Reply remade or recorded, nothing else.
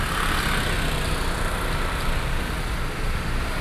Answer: recorded